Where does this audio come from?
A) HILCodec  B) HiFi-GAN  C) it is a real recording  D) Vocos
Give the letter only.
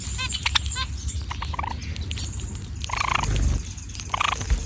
C